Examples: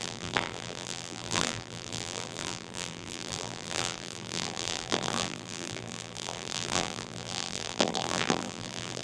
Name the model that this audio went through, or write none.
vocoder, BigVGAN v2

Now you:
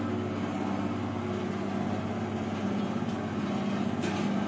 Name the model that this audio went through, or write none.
none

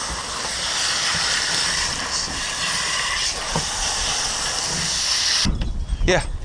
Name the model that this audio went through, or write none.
vocoder, BigVGAN v2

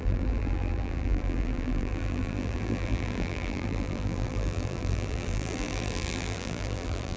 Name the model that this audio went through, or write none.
vocoder, BigVGAN v2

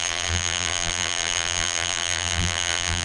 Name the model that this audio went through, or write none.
vocoder, BigVGAN v2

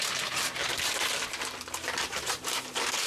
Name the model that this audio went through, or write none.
vocoder, BigVGAN v2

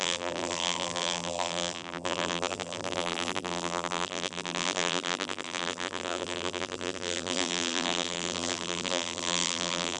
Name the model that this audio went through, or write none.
vocoder, BigVGAN v2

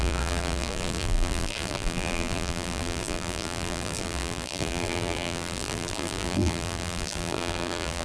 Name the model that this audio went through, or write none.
vocoder, BigVGAN v2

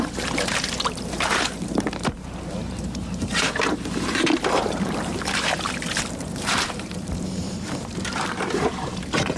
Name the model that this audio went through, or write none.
vocoder, BigVGAN v2